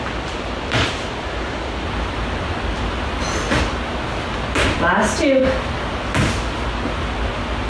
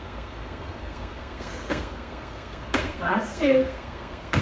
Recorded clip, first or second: first